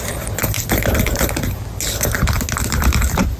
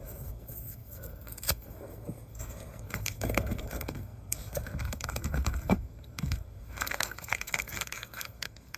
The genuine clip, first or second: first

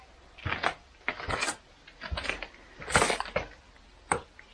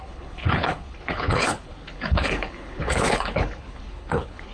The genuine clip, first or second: first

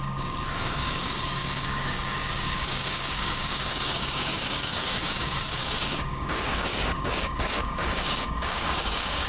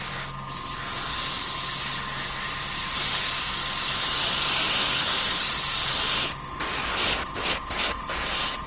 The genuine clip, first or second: second